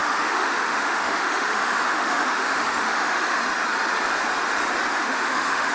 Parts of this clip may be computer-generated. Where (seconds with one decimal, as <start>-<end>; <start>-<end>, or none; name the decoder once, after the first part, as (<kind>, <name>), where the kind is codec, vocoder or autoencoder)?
0.0-3.4 (autoencoder, DAC-VAE); 4.9-5.7